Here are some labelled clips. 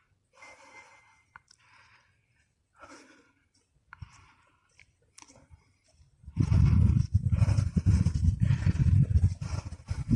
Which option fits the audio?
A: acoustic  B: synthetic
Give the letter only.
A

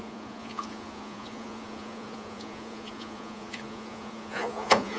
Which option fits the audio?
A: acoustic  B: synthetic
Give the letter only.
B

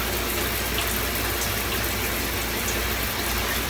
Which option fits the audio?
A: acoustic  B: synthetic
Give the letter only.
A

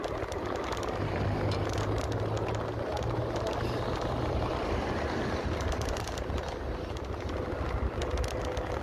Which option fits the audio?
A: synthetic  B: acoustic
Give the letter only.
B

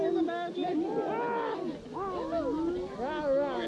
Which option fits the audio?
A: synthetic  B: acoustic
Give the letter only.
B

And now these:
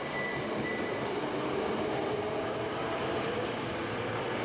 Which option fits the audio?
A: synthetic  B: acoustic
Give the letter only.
B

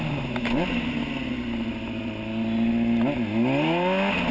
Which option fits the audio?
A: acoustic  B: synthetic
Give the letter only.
A